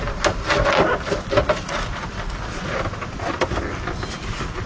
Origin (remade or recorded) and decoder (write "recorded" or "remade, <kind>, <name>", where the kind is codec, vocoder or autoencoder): recorded